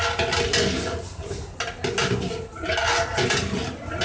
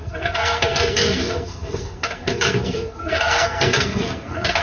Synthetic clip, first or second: second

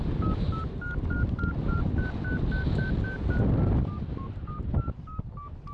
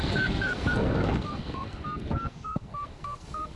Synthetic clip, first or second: second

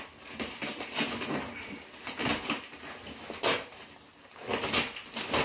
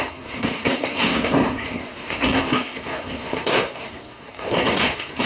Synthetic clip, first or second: second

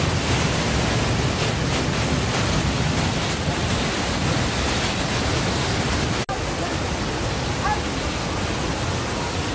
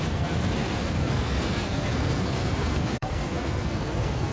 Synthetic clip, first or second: second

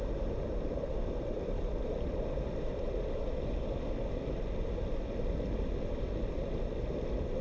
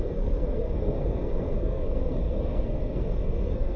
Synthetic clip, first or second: second